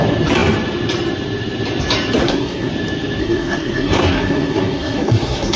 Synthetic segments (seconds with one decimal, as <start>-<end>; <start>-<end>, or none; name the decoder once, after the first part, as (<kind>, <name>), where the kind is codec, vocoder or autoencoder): 2.2-2.7 (codec, SNAC); 3.2-5.6

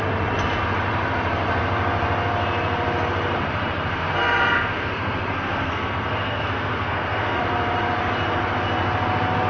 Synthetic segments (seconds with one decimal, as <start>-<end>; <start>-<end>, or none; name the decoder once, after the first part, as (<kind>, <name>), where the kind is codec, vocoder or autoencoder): 4.0-7.4 (codec, SNAC)

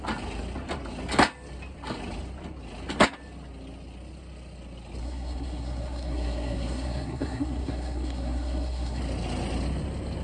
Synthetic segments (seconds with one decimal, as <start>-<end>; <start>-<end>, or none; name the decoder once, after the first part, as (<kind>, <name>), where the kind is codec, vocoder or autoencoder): 5.0-9.0 (codec, SNAC)

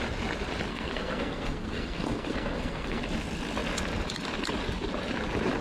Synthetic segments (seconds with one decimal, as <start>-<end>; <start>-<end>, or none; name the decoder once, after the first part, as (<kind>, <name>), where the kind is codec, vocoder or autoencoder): 0.7-3.0 (codec, SNAC)

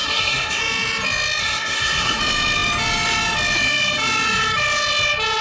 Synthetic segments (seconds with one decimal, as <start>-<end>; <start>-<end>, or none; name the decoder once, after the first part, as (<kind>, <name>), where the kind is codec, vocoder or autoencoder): 0.0-0.6 (codec, SNAC); 1.4-2.2

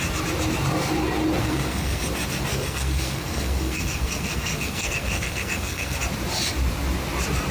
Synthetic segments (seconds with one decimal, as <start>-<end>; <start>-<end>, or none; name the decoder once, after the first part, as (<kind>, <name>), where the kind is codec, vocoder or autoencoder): 1.4-2.0 (codec, SNAC); 2.5-6.0

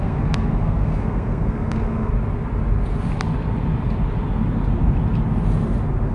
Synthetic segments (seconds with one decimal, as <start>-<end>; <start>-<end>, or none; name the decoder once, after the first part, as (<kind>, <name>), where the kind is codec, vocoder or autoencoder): 0.0-2.1 (codec, SNAC)